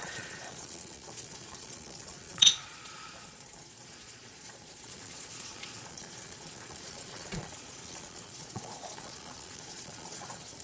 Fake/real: fake